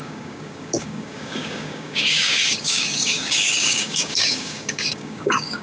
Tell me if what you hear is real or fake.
fake